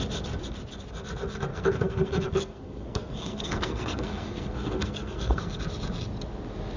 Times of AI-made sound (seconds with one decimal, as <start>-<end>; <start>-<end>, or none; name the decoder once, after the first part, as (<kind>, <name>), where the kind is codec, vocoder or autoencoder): 1.5-5.6 (codec, SNAC)

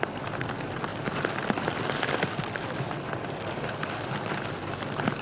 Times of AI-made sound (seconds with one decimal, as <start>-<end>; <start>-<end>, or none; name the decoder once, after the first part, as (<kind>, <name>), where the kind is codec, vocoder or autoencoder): none

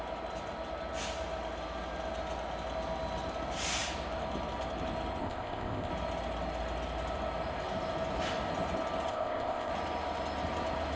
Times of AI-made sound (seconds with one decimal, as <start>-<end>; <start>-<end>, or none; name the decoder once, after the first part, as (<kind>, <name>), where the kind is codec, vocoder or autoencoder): 5.2-5.9 (codec, ZipCodec); 9.1-9.7

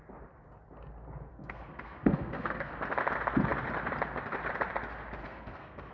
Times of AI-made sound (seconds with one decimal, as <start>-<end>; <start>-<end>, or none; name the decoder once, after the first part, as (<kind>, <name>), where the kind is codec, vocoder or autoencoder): 1.3-2.7 (codec, SNAC); 5.2-5.9